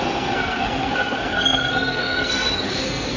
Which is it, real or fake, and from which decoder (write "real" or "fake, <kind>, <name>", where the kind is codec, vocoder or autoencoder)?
fake, codec, SNAC